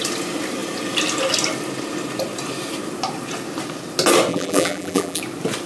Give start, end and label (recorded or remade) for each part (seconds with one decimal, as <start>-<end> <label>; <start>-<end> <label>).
0.0-4.3 recorded; 4.3-5.2 remade; 5.2-5.7 recorded